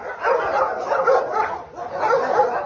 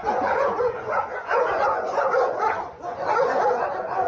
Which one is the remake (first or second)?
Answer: second